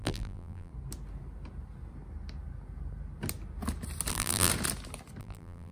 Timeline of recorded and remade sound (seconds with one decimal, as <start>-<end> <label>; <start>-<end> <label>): 0.0-0.7 remade; 0.7-4.1 recorded; 4.1-4.5 remade; 4.5-5.2 recorded; 5.2-5.7 remade